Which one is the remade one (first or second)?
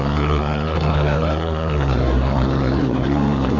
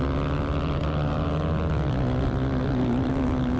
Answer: first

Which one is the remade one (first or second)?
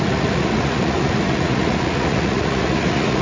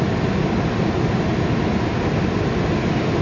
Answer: first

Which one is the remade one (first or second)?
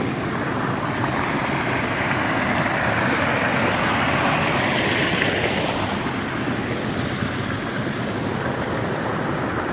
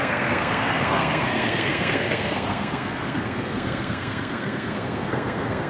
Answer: second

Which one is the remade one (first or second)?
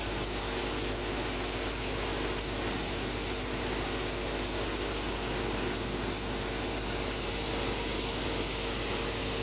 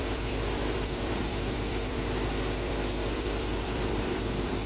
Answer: second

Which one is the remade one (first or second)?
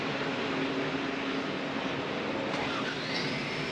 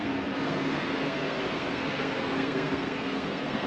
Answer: second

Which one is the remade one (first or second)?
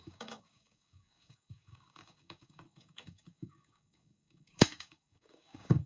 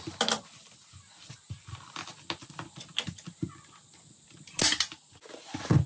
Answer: first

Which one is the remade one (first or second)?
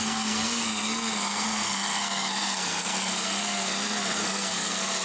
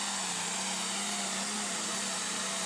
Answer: first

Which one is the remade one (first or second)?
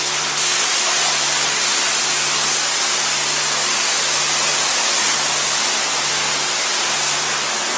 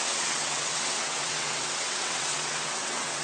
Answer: second